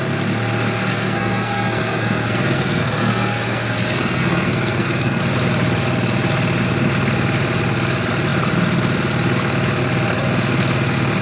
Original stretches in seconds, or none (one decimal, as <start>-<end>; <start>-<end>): 0.0-0.9; 5.2-11.2